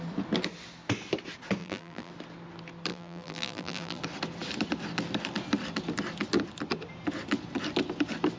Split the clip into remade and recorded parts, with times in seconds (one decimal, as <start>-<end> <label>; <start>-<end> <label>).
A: 0.0-1.6 recorded; 1.6-2.1 remade; 2.1-2.9 recorded; 2.9-4.0 remade; 4.0-8.4 recorded